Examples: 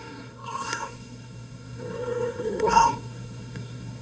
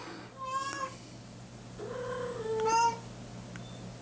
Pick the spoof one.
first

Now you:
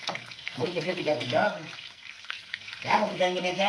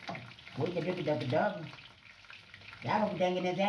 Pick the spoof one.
first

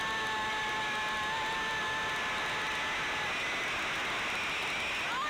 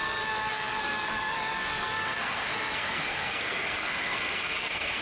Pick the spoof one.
second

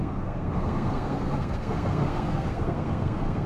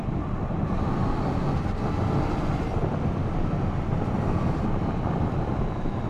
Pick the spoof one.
first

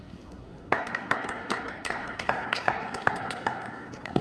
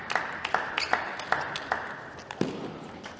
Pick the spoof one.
first